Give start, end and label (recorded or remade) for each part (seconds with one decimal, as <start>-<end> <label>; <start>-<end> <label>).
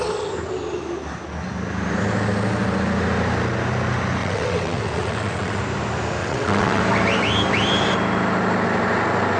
0.0-4.2 recorded; 4.2-5.6 remade; 5.6-6.2 recorded; 6.2-6.8 remade; 6.8-9.4 recorded